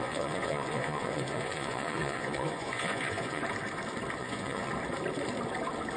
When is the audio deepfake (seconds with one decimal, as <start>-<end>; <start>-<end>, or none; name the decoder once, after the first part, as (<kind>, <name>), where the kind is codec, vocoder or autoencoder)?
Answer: 0.0-3.4 (vocoder, Vocos); 4.2-4.7